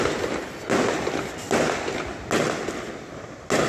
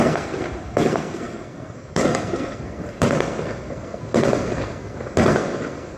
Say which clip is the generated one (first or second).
second